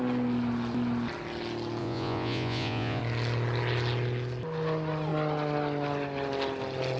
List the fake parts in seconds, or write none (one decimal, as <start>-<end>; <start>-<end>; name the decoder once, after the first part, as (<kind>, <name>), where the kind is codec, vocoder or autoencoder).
1.8-3.0 (vocoder, Vocos)